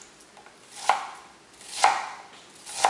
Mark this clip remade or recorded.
recorded